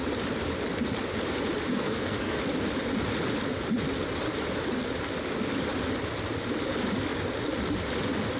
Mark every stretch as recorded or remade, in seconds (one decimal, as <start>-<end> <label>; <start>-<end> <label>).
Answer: 0.0-1.7 recorded; 1.7-2.4 remade; 2.4-8.4 recorded